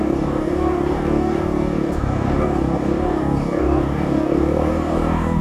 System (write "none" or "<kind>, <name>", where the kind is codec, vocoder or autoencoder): codec, DAC